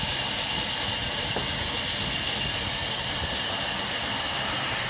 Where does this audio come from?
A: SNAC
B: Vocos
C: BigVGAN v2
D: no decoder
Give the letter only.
D